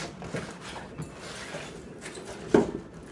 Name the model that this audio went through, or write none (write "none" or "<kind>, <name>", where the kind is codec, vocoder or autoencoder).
none